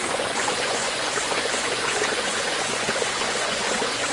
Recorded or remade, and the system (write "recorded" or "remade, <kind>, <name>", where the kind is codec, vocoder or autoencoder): remade, vocoder, Vocos